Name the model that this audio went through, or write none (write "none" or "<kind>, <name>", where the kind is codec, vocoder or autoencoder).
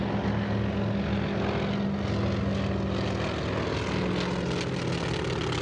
none